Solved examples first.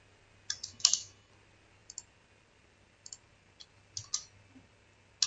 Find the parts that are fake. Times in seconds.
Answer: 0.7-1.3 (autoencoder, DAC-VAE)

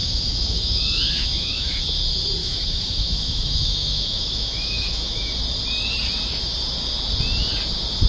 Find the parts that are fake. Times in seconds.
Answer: 0.0-1.8 (autoencoder, DAC-VAE); 2.4-5.3

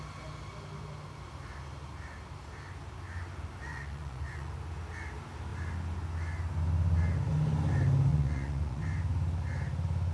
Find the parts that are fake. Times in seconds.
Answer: 3.7-4.5 (vocoder, Vocos); 8.1-8.8